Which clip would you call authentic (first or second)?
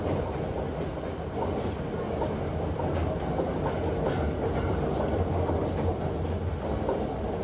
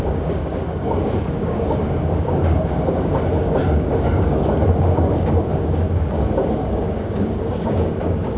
first